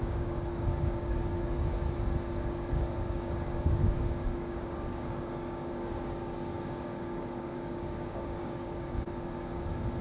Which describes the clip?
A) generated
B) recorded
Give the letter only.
A